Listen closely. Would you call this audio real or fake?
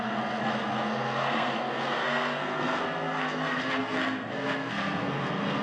fake